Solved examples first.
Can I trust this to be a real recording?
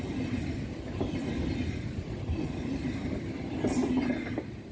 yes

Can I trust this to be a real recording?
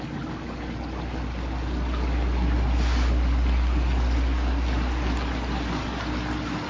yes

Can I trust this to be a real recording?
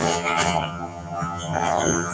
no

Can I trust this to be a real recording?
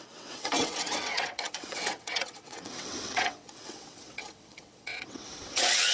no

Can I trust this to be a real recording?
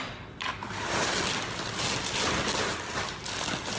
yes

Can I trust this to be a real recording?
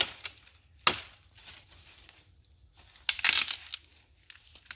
yes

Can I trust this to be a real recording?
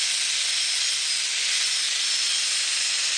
yes